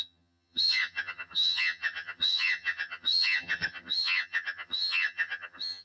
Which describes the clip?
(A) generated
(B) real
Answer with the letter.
A